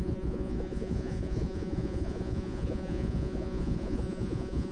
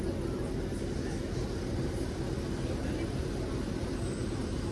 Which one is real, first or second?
second